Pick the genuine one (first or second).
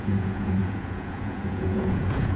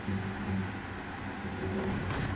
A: second